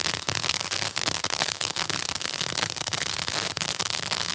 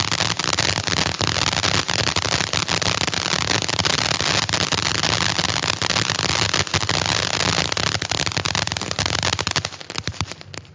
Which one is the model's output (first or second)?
first